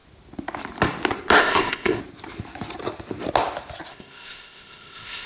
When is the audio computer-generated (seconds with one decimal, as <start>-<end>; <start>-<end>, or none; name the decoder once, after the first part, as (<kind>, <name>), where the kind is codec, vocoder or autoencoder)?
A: 1.4-2.0 (codec, ZipCodec); 3.9-5.3